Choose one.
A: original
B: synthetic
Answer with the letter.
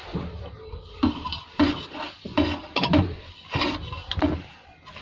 A